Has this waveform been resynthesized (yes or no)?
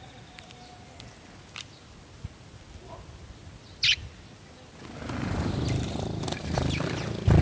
no